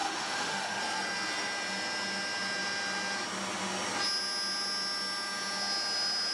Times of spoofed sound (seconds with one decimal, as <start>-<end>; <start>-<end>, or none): 0.0-0.8